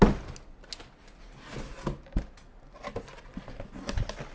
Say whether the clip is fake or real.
real